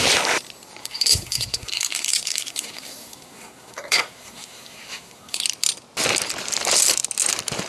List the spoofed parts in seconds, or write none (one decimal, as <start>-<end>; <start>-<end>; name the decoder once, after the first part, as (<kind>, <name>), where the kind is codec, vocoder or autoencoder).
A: 0.8-5.4 (codec, SNAC)